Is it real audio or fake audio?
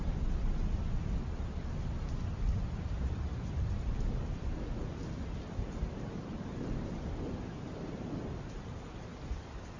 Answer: real